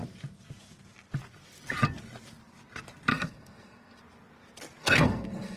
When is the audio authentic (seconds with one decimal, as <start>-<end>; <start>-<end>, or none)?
0.0-3.1; 4.0-4.8